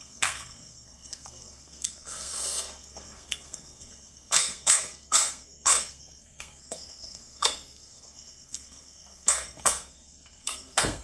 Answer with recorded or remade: remade